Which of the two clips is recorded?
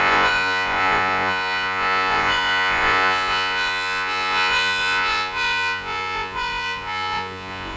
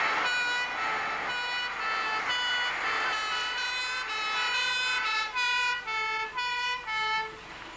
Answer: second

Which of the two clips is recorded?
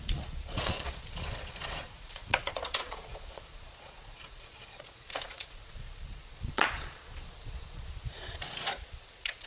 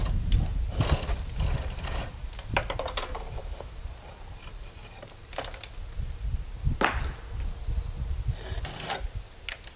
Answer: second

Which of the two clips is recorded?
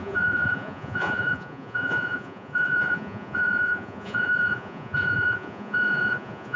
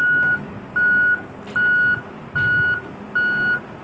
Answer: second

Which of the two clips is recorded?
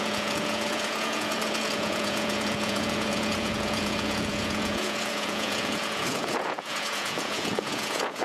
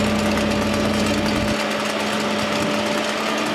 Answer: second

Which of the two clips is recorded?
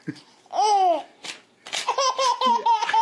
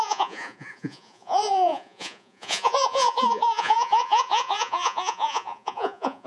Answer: first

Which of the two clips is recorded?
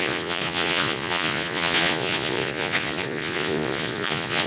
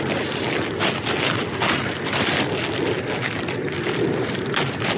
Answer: second